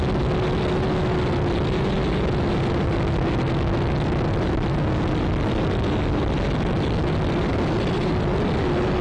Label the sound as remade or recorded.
recorded